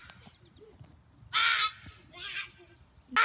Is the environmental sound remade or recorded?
recorded